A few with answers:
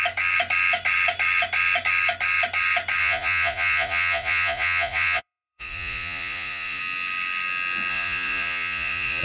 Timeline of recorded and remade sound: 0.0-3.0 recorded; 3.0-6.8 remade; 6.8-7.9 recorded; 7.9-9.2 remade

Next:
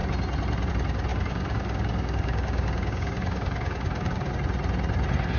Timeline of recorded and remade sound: 0.0-1.1 recorded; 1.1-4.3 remade; 4.3-5.4 recorded

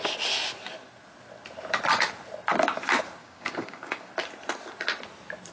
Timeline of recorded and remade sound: 0.0-3.2 recorded; 3.2-4.1 remade; 4.1-5.5 recorded

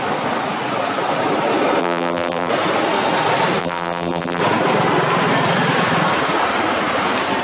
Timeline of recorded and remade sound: 0.0-1.8 recorded; 1.8-2.5 remade; 2.5-3.6 recorded; 3.6-4.4 remade; 4.4-7.4 recorded

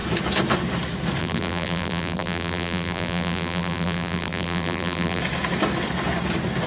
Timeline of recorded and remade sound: 0.0-1.2 recorded; 1.2-5.2 remade; 5.2-6.7 recorded

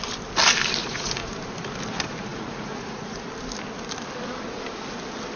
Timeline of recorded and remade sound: 0.0-0.8 recorded; 0.8-1.3 remade; 1.3-2.3 recorded; 2.3-3.3 remade; 3.3-5.4 recorded

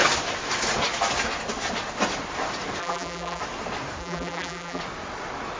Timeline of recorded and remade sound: 0.0-2.8 recorded; 2.8-3.4 remade; 3.4-4.0 recorded; 4.0-4.8 remade; 4.8-5.6 recorded

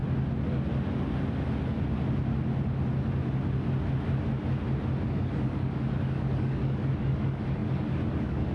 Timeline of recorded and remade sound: 0.0-5.1 recorded; 5.1-8.5 remade